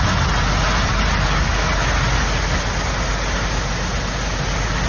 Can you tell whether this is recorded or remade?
recorded